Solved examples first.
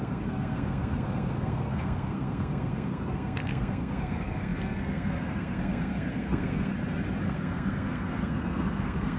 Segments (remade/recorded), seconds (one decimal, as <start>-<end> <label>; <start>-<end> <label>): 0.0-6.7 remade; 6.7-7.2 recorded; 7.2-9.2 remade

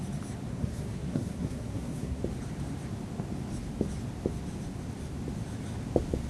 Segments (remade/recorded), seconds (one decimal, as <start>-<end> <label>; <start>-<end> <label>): 0.0-0.5 recorded; 0.5-2.2 remade; 2.2-6.3 recorded

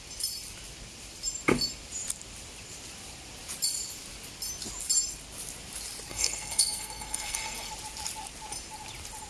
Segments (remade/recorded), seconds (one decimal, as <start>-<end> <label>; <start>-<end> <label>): 0.0-6.1 recorded; 6.1-7.7 remade; 7.7-9.3 recorded